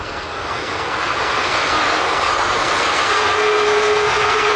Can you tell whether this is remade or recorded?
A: remade